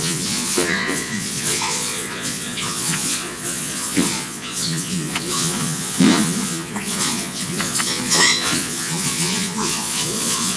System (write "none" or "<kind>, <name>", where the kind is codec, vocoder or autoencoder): vocoder, Vocos